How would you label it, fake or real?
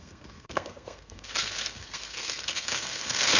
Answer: fake